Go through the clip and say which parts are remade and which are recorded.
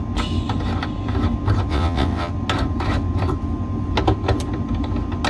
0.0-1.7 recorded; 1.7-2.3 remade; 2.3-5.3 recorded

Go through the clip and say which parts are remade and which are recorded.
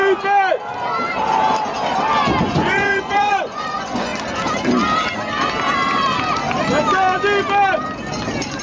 0.0-2.4 recorded; 2.4-4.1 remade; 4.1-8.6 recorded